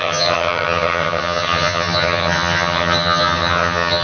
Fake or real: fake